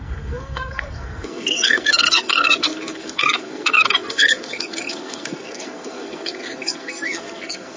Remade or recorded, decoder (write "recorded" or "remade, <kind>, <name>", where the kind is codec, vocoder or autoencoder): remade, codec, SNAC